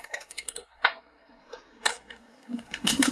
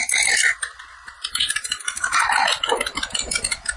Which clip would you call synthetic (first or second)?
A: first